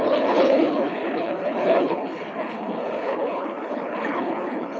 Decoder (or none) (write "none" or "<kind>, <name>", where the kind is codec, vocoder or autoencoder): codec, HILCodec